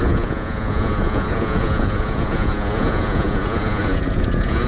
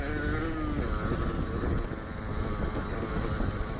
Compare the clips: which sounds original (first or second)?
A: second